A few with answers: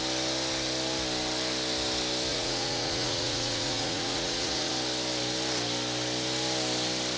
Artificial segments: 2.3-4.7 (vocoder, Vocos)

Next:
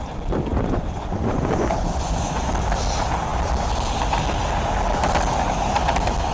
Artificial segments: 0.5-2.5 (vocoder, Vocos)

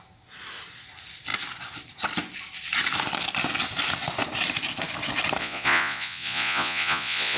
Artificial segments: 5.4-7.4 (vocoder, Vocos)